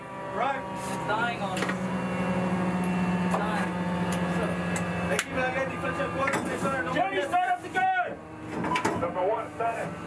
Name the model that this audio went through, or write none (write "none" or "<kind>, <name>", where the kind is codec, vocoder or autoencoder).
none